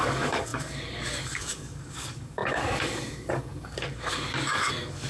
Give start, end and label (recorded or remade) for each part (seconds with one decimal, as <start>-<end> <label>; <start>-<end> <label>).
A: 0.0-5.1 remade